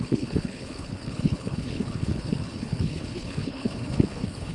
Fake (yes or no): yes